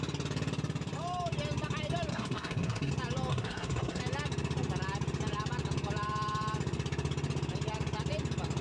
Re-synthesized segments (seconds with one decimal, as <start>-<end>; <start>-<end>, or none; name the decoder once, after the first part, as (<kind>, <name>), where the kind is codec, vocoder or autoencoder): 2.1-2.9 (codec, SNAC); 3.3-4.0